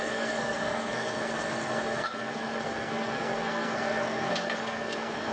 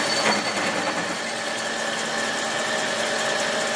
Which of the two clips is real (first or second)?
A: second